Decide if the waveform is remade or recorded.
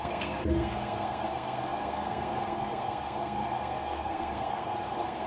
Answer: remade